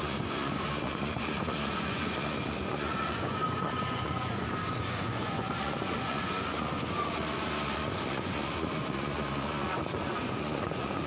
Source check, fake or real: fake